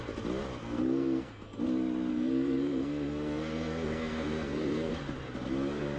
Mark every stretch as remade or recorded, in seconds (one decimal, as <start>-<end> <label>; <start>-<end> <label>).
0.0-0.6 recorded; 0.6-1.6 remade; 1.6-2.1 recorded; 2.1-4.9 remade; 4.9-6.0 recorded